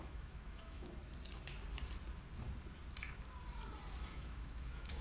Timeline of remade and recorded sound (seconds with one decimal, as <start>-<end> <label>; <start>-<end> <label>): 0.0-1.0 remade; 1.0-4.0 recorded; 4.0-5.0 remade

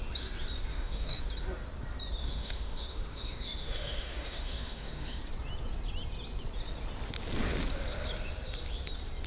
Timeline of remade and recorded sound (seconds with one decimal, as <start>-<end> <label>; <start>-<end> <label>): 0.0-0.7 recorded; 0.7-1.2 remade; 1.2-2.2 recorded; 2.2-5.2 remade; 5.2-9.3 recorded

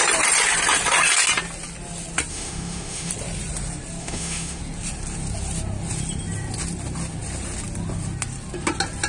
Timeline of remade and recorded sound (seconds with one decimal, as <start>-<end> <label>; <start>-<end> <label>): 0.0-2.3 recorded; 2.3-3.1 remade; 3.1-4.0 recorded; 4.0-4.6 remade; 4.6-9.1 recorded